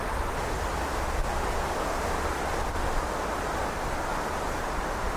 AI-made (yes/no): no